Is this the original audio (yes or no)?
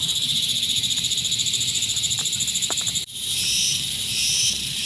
no